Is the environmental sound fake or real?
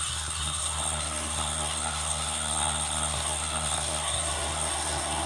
fake